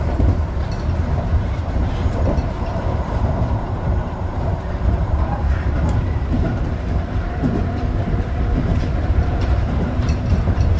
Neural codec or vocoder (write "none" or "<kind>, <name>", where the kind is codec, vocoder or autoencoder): vocoder, BigVGAN v2